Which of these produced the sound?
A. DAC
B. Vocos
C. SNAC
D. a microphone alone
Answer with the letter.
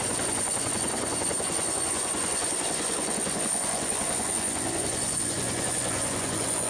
B